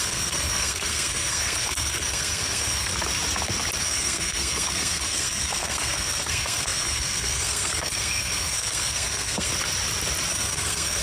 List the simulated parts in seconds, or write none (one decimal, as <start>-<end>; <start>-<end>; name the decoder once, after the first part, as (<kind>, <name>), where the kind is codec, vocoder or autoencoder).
0.0-2.9 (codec, SNAC); 3.8-9.5; 10.3-11.0